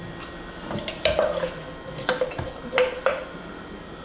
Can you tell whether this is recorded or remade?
recorded